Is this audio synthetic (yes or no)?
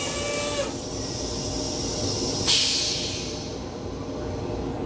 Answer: no